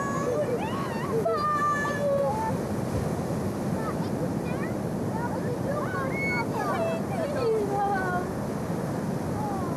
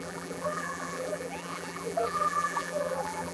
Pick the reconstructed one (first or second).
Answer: second